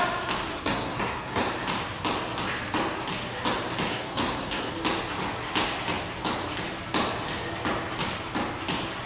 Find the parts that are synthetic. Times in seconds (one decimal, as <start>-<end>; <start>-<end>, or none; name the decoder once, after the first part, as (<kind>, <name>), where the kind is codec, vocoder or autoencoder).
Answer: 0.5-1.4 (codec, SNAC); 3.9-4.7